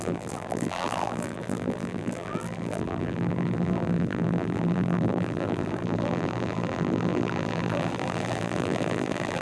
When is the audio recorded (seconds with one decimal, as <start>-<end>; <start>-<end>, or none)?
none